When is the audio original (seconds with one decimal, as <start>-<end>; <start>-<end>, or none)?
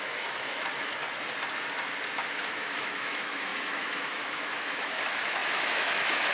1.0-2.3